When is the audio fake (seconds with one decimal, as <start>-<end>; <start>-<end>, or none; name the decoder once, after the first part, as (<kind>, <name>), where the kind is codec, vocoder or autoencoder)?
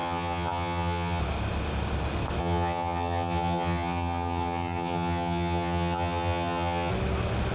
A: 0.0-1.2 (vocoder, HiFi-GAN); 2.4-6.9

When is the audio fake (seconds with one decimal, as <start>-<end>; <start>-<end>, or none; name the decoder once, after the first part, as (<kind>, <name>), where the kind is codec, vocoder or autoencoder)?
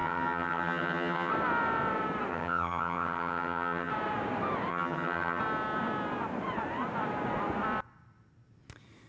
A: 0.0-1.3 (vocoder, HiFi-GAN); 2.3-3.9; 4.7-5.4